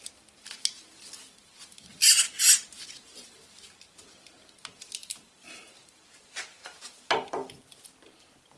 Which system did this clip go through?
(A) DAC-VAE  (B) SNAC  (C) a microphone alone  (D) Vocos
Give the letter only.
C